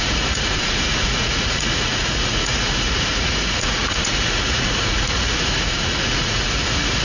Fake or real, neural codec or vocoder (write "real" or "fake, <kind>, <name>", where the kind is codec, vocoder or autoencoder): fake, vocoder, Vocos